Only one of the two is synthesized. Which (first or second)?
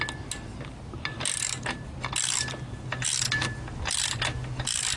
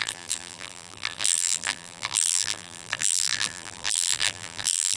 second